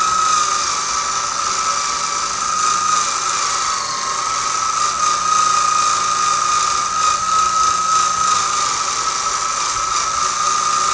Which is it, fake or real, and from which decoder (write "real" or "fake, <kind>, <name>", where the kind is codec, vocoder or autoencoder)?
real